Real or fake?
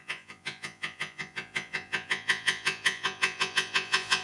fake